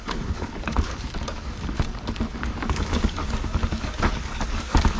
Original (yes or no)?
no